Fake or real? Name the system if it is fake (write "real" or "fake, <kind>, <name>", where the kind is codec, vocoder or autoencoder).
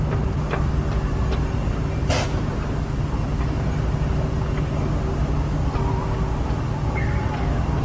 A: real